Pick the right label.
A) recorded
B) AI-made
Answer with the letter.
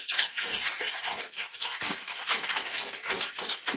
B